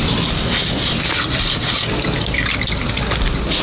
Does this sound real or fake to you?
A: real